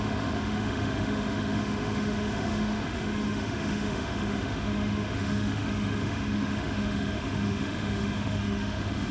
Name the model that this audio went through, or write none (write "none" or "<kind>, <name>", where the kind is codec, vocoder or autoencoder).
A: autoencoder, DAC-VAE